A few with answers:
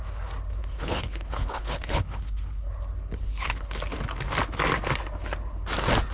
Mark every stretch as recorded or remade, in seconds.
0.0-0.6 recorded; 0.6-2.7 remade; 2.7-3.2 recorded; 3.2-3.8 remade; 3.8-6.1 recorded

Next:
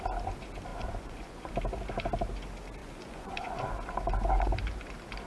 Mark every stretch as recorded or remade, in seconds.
0.0-0.7 recorded; 0.7-1.5 remade; 1.5-2.8 recorded; 2.8-3.6 remade; 3.6-5.3 recorded